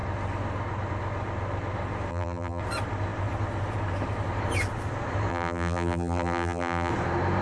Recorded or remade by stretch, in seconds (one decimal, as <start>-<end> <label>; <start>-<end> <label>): 0.0-2.1 recorded; 2.1-2.6 remade; 2.6-5.3 recorded; 5.3-6.9 remade; 6.9-7.4 recorded